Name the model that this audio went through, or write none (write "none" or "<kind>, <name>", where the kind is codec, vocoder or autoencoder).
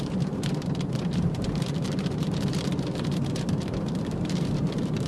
vocoder, BigVGAN v2